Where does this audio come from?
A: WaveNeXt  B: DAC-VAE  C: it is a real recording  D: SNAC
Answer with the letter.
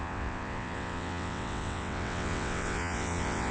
A